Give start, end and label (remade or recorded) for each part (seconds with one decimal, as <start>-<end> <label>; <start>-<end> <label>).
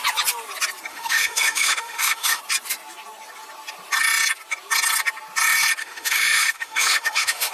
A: 0.0-0.9 recorded; 0.9-2.4 remade; 2.4-5.8 recorded; 5.8-7.5 remade